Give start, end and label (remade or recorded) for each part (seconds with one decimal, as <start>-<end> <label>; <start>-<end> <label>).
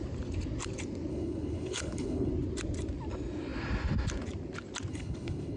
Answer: 0.0-1.1 recorded; 1.1-2.3 remade; 2.3-4.9 recorded; 4.9-5.6 remade